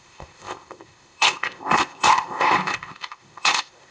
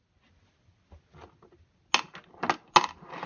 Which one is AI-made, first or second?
first